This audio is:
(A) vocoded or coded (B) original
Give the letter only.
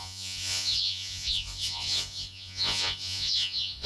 A